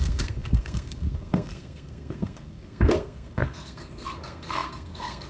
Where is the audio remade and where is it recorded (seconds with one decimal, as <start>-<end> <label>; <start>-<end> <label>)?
0.0-5.3 remade